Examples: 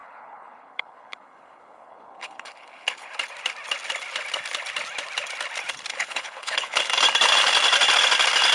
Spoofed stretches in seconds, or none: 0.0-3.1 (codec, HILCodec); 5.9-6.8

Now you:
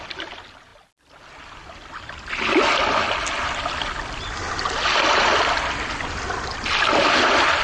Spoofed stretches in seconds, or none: none

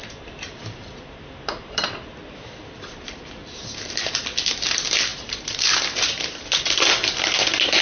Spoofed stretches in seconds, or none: 0.0-2.6 (vocoder, BigVGAN v2); 3.4-4.1; 5.1-6.6

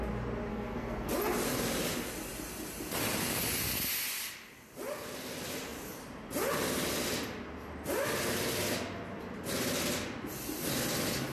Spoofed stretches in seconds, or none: 0.5-1.1 (codec, SNAC)

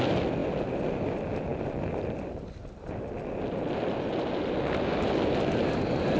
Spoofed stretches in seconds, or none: none